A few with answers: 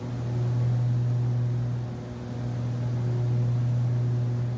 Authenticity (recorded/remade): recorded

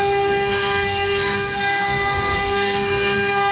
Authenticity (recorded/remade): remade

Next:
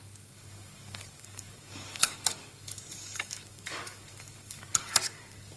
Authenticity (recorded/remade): remade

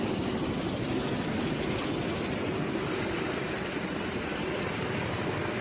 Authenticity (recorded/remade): recorded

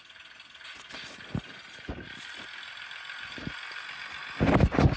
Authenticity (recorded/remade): recorded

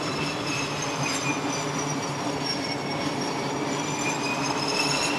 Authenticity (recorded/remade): remade